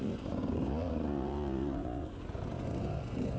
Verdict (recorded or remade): remade